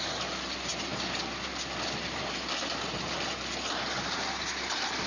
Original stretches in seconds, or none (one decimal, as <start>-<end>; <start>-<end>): 0.0-5.1